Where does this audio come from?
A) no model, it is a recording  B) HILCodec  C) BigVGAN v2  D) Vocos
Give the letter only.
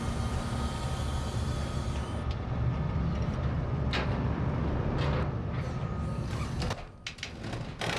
A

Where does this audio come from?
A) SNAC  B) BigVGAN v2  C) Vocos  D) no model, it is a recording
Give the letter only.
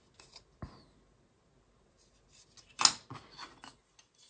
D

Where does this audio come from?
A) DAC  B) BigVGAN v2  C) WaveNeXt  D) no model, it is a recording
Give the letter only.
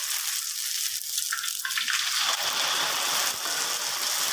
D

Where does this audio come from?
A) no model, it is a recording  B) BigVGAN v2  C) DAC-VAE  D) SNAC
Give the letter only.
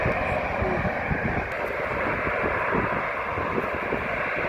A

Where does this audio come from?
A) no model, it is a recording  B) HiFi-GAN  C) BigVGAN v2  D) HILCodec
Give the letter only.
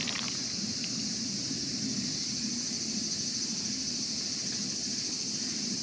A